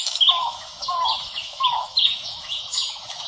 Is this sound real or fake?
fake